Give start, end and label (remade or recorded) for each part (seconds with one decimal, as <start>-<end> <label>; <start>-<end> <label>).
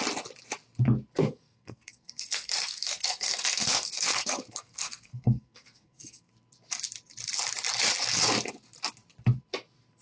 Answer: 0.0-1.2 recorded; 1.2-6.3 remade; 6.3-10.0 recorded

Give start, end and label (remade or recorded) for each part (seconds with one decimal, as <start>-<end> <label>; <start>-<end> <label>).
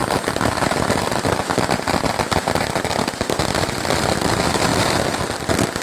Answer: 0.0-5.8 recorded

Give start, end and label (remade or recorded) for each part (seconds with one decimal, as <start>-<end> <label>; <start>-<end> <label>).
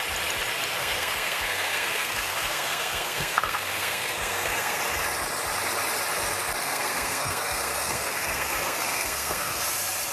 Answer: 0.0-0.8 recorded; 0.8-4.8 remade; 4.8-6.6 recorded; 6.6-9.6 remade; 9.6-10.1 recorded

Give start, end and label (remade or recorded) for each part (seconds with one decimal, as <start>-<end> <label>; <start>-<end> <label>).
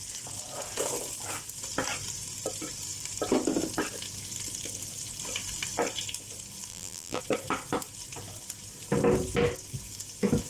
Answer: 0.0-6.7 recorded; 6.7-7.2 remade; 7.2-10.5 recorded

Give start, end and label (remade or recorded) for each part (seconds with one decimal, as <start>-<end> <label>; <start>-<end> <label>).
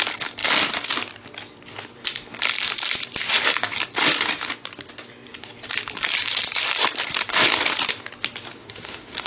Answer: 0.0-8.6 recorded; 8.6-9.3 remade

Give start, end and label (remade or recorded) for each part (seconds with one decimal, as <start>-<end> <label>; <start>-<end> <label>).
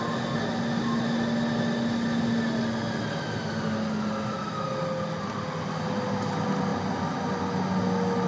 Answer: 0.0-8.3 recorded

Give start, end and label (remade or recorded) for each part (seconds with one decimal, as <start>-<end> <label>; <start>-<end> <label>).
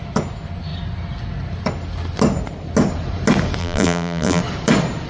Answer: 0.0-3.6 recorded; 3.6-4.4 remade; 4.4-5.1 recorded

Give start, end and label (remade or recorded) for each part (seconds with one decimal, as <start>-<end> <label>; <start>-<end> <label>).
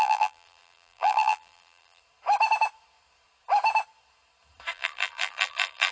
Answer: 0.0-2.0 remade; 2.0-4.7 recorded; 4.7-5.9 remade